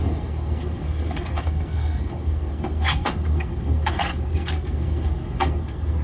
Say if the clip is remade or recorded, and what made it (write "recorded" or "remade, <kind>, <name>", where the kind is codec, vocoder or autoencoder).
remade, codec, SNAC